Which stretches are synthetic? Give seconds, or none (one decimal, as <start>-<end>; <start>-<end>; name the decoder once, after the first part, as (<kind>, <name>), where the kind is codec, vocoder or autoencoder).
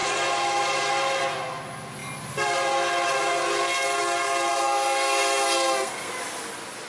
4.5-6.1 (codec, SNAC)